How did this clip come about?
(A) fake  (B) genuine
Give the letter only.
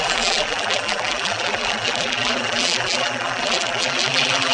A